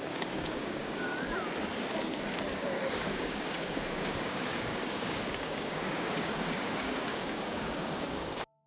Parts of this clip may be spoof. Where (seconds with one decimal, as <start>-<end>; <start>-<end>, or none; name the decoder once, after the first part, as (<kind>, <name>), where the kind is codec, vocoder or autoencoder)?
0.0-1.1 (codec, DAC); 2.9-8.7